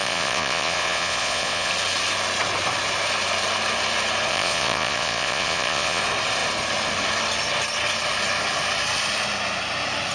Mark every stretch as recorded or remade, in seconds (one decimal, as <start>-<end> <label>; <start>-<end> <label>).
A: 0.0-1.7 remade; 1.7-4.3 recorded; 4.3-6.0 remade; 6.0-10.1 recorded